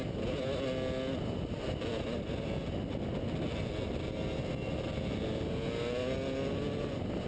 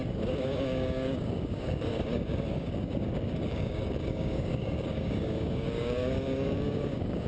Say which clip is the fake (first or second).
second